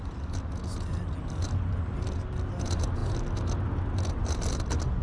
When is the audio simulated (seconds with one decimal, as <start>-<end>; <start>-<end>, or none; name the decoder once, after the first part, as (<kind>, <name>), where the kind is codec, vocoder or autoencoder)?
none